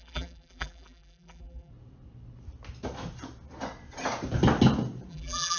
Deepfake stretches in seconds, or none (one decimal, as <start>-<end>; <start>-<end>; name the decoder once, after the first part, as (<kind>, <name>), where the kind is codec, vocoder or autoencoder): 0.0-1.7 (vocoder, BigVGAN v2); 5.1-5.6